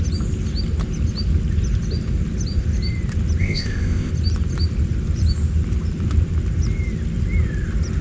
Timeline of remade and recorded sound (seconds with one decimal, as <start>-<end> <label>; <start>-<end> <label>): 0.0-3.4 recorded; 3.4-4.1 remade; 4.1-8.0 recorded